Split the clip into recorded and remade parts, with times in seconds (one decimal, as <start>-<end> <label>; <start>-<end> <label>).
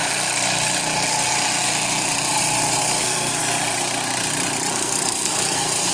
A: 0.0-2.8 recorded; 2.8-3.4 remade; 3.4-4.7 recorded; 4.7-5.9 remade